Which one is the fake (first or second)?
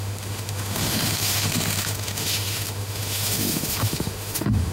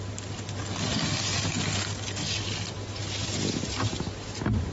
first